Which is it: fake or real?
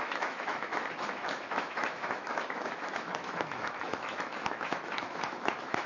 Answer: fake